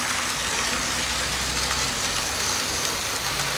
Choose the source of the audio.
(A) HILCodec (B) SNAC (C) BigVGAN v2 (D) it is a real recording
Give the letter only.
D